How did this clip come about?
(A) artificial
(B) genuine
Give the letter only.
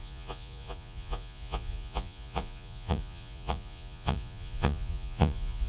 A